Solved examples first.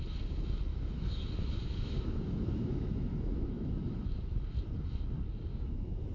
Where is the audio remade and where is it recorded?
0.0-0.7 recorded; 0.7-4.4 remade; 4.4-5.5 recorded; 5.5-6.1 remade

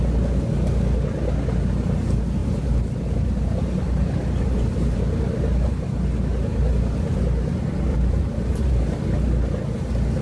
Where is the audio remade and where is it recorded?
0.0-2.4 recorded; 2.4-5.7 remade; 5.7-7.9 recorded; 7.9-8.7 remade; 8.7-10.2 recorded

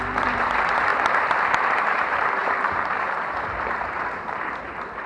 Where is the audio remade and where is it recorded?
0.0-0.9 remade; 0.9-1.8 recorded; 1.8-5.1 remade

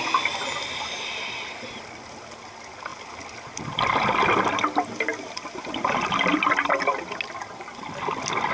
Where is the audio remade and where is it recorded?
0.0-8.5 recorded

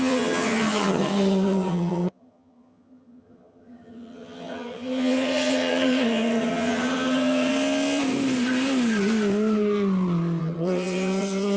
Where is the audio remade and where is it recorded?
0.0-7.5 remade; 7.5-10.4 recorded; 10.4-11.6 remade